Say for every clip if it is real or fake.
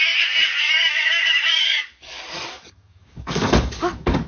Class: fake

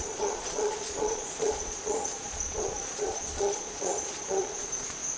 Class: fake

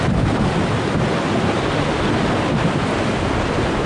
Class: real